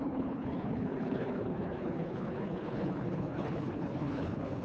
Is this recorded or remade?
remade